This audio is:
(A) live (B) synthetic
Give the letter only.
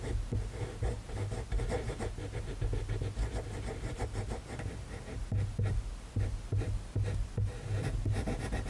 A